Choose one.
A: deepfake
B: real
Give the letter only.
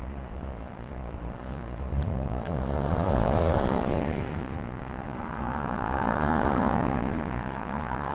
A